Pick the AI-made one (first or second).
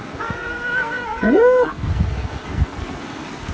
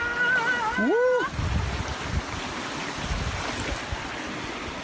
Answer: first